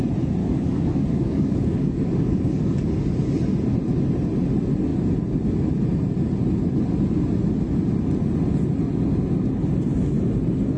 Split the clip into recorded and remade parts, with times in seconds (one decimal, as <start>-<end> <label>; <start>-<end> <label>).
0.0-0.4 recorded; 0.4-2.9 remade; 2.9-10.8 recorded